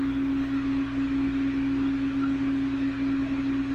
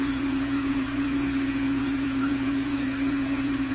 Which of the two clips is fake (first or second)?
second